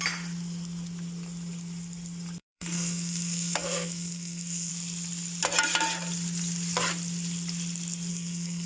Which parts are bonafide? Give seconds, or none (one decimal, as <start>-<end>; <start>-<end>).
0.0-2.4; 4.7-8.1